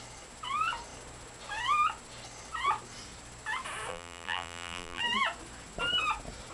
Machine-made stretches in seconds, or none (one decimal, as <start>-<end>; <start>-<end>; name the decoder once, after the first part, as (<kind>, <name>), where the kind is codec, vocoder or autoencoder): 3.9-5.0 (vocoder, BigVGAN v2)